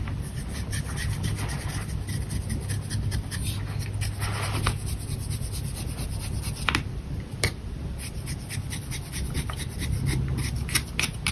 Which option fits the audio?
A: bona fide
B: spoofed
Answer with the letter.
B